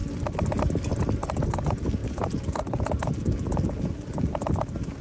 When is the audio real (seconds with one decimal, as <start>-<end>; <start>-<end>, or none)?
0.0-5.0